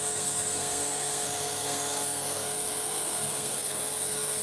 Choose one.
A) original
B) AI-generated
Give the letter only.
B